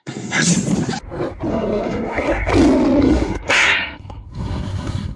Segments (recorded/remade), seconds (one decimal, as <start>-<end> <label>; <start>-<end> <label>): 0.0-0.5 remade; 0.5-1.5 recorded; 1.5-2.5 remade; 2.5-3.0 recorded; 3.0-5.2 remade